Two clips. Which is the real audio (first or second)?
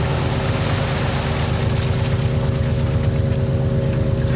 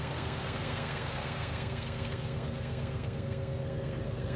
first